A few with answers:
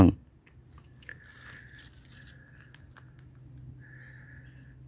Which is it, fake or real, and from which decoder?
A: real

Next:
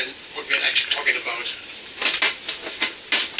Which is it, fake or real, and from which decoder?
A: real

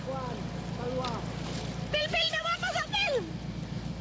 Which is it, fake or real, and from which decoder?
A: real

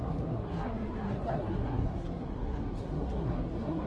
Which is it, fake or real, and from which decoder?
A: fake, codec, SNAC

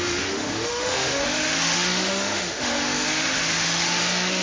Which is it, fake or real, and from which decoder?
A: fake, autoencoder, DAC-VAE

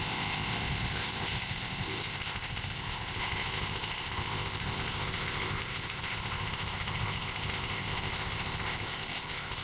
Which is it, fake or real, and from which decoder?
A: fake, codec, ZipCodec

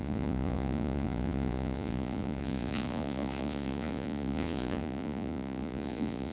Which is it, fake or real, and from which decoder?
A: fake, vocoder, Vocos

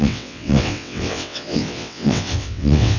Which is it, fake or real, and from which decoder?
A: fake, vocoder, WaveNeXt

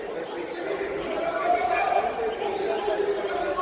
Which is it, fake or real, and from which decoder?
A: real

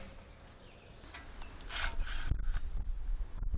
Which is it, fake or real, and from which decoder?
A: real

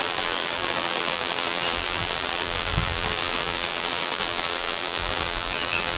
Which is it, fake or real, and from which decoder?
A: fake, vocoder, BigVGAN v2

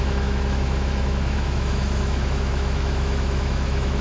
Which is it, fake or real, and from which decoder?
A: fake, autoencoder, DAC-VAE